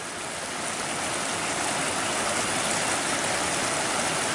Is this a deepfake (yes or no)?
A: no